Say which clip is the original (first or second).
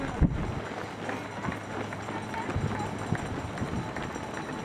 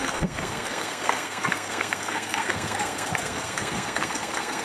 first